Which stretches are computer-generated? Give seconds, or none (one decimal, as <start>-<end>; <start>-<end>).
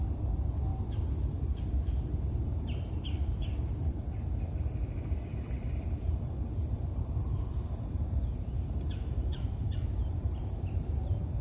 0.7-4.4; 6.6-11.4